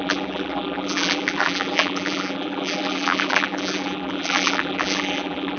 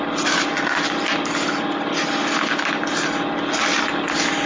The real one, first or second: second